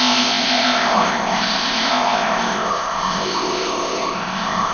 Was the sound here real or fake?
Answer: fake